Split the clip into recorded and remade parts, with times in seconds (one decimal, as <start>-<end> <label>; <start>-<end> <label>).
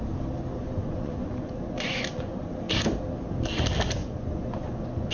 0.0-0.6 recorded; 0.6-2.5 remade; 2.5-4.0 recorded; 4.0-5.1 remade